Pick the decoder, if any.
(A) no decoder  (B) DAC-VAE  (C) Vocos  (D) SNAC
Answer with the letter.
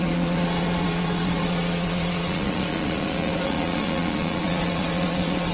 C